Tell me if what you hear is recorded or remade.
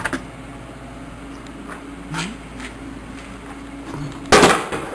recorded